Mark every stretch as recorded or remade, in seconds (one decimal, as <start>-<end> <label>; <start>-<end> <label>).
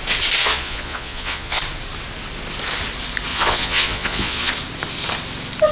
0.0-0.4 recorded; 0.4-1.6 remade; 1.6-3.3 recorded; 3.3-4.5 remade; 4.5-5.7 recorded